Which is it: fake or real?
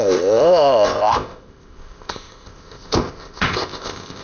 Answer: fake